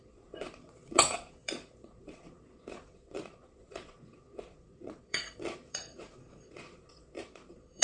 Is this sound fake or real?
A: fake